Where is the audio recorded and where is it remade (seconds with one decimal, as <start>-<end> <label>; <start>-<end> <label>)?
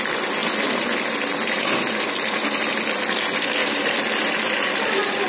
0.0-5.3 recorded